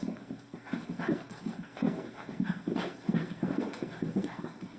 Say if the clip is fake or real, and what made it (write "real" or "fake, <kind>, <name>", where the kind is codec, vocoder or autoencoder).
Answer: fake, codec, SNAC